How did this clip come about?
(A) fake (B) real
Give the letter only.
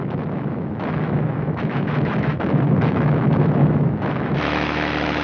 A